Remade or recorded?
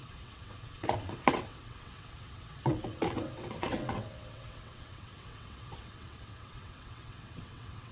remade